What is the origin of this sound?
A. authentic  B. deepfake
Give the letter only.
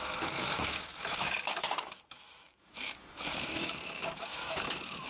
B